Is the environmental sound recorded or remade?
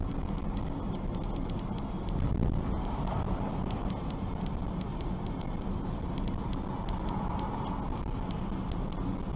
recorded